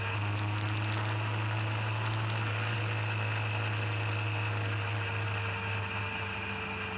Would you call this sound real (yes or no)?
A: yes